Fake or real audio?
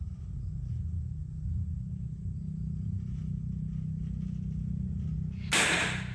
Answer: real